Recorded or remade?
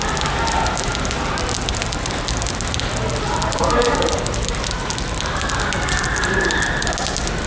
recorded